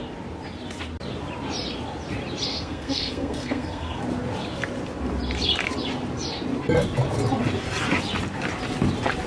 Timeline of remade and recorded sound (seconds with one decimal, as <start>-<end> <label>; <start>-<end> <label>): 0.0-2.5 recorded; 2.5-4.0 remade; 4.0-9.3 recorded